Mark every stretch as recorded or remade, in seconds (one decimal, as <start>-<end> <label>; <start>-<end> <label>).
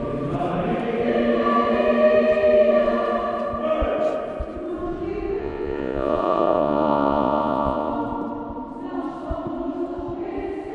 0.0-5.4 recorded; 5.4-7.9 remade; 7.9-10.7 recorded